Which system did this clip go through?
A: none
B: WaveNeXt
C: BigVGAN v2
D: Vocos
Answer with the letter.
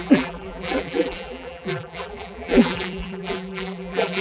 C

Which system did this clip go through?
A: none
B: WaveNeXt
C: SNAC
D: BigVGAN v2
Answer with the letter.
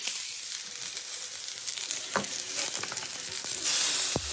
D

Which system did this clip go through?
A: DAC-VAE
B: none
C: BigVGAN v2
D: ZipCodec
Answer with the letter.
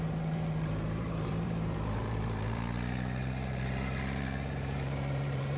C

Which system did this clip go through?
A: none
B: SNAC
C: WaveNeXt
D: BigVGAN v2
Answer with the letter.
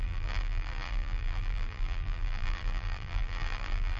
D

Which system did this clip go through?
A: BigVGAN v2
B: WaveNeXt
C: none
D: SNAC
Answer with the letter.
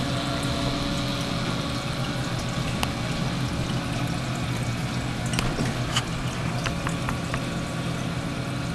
C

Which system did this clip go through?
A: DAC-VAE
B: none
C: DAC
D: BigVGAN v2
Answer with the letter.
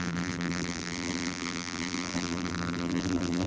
D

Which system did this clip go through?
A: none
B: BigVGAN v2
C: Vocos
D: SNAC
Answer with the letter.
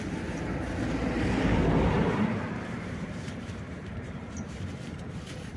B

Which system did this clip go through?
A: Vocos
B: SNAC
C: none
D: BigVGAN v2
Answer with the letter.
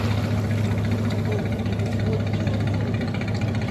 C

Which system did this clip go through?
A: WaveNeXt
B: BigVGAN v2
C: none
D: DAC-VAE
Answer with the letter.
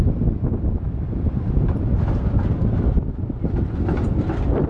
B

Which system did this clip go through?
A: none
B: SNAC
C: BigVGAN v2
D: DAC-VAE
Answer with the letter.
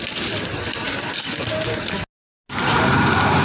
A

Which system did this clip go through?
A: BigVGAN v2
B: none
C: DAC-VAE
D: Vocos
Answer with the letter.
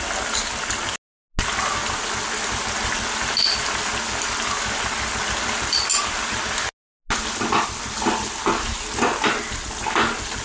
B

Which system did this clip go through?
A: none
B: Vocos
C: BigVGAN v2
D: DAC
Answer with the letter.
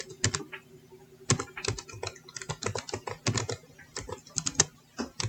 A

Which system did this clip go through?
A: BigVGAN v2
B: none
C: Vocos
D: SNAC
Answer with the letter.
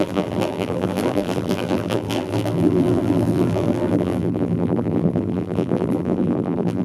A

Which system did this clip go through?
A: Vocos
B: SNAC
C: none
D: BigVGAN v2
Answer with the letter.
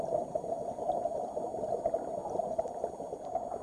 C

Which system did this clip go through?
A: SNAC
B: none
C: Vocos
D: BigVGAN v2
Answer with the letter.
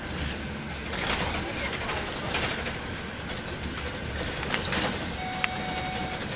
D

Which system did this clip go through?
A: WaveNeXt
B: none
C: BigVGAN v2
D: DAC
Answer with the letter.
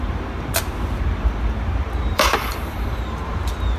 C